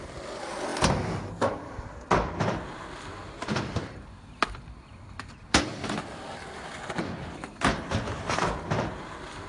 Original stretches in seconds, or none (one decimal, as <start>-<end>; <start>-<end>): 0.7-1.8